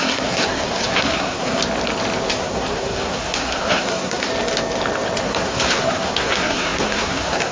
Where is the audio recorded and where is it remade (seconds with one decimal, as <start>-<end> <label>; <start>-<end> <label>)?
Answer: 0.0-1.6 remade; 1.6-2.3 recorded; 2.3-4.3 remade; 4.3-5.2 recorded; 5.2-7.5 remade